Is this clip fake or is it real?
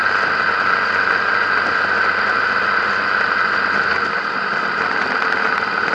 real